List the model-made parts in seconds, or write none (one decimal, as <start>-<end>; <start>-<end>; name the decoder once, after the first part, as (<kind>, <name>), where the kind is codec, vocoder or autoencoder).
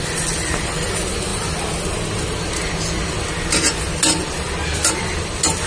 none